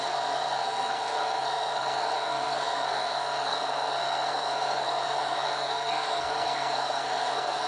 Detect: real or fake fake